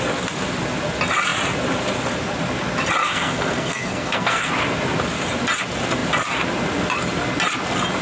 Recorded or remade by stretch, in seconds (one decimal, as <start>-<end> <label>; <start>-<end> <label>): 0.0-3.0 recorded; 3.0-4.5 remade; 4.5-8.0 recorded